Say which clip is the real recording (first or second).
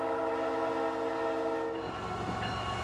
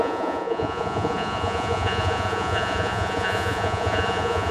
first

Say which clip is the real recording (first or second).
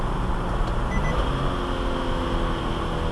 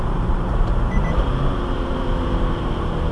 first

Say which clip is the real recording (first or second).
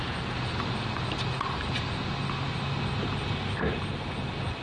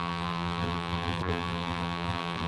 first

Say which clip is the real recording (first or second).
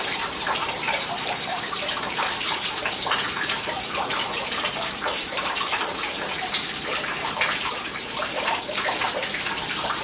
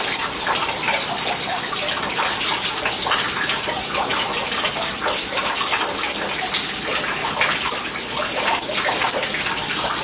second